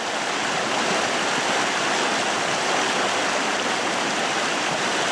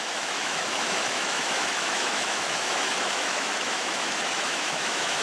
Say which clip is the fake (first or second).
second